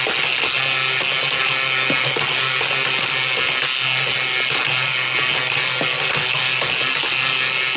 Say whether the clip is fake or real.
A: real